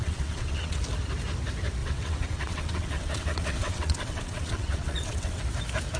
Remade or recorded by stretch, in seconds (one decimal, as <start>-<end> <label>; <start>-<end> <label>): 0.0-0.8 remade; 0.8-1.8 recorded; 1.8-5.4 remade; 5.4-6.0 recorded